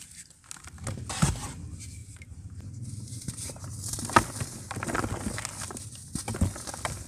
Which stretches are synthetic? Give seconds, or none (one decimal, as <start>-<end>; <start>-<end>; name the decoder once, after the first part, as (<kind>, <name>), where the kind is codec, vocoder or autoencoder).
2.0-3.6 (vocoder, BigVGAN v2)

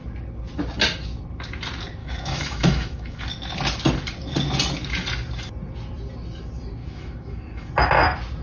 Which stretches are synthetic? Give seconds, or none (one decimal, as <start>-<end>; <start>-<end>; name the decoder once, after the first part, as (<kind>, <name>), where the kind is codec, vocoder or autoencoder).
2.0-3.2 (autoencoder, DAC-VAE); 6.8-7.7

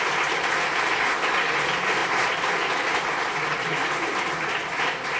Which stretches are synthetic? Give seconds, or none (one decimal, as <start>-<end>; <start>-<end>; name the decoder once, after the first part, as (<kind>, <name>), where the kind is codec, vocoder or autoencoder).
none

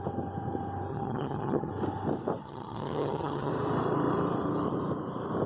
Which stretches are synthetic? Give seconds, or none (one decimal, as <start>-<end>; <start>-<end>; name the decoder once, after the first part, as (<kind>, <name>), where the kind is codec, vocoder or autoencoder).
0.9-1.7 (vocoder, HiFi-GAN); 2.4-3.5

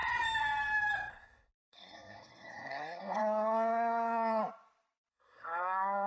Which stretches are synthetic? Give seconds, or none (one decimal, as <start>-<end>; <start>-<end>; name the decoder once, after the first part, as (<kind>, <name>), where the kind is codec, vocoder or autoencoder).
1.1-4.4 (codec, SNAC); 5.1-6.1

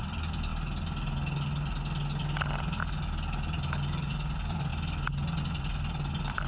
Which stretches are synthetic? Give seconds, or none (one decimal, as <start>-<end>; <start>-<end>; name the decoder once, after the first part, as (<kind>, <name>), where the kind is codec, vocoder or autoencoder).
0.0-0.5 (vocoder, BigVGAN v2); 4.1-4.7; 5.4-6.5

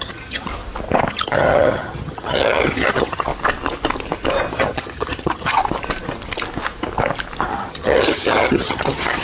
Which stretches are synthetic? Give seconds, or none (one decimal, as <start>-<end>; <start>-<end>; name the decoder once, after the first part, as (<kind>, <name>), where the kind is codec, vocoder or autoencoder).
0.0-0.5 (vocoder, HiFi-GAN); 1.1-3.3; 4.5-5.6; 7.5-9.2

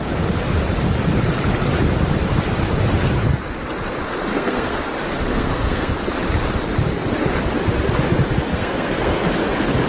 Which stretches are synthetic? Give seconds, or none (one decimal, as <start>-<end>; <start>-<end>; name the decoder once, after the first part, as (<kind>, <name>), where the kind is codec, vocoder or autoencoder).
4.3-4.8 (codec, SNAC); 5.3-5.9; 8.5-9.2